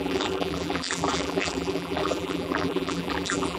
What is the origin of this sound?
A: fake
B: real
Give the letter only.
A